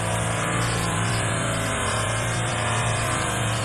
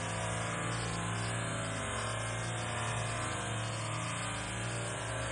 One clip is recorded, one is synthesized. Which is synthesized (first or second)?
first